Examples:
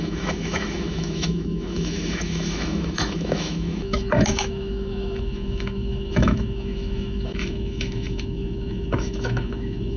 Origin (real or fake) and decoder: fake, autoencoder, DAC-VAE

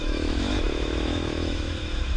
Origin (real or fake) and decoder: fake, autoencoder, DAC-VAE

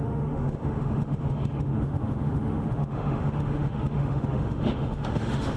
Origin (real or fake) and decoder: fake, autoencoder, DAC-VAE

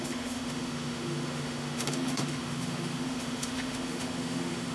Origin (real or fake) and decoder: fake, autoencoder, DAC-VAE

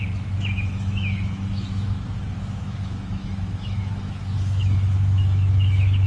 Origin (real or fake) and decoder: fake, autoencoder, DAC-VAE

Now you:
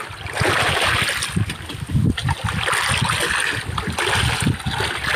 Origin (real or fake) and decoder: real